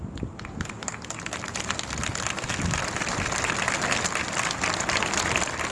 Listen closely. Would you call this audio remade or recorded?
recorded